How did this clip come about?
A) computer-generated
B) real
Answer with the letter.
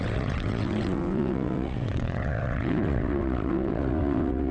A